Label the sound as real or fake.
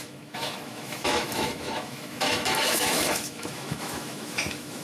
fake